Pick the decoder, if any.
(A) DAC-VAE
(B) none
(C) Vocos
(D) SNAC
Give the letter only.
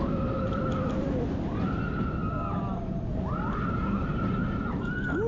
B